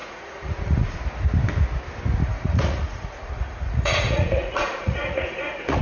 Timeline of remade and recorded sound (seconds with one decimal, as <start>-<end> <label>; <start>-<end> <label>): 0.0-1.0 remade; 1.0-2.2 recorded; 2.2-5.8 remade